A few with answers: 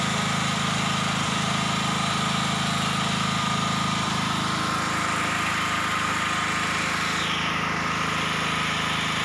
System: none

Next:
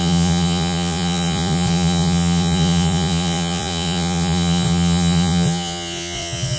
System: vocoder, Vocos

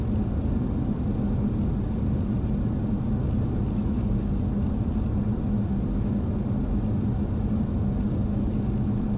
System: none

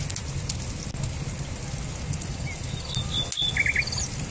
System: none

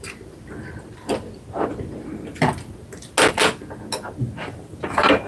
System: none